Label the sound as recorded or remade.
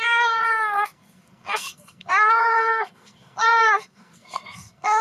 remade